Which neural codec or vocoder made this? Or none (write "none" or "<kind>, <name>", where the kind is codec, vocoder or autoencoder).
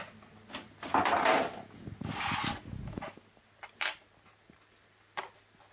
none